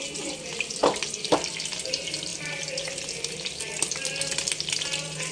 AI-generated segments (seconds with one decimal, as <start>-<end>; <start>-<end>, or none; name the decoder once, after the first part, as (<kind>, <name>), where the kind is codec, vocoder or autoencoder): none